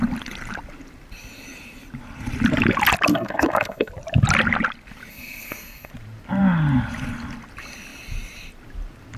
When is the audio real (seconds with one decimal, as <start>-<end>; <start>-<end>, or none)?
0.0-3.1; 3.9-5.1; 5.9-9.2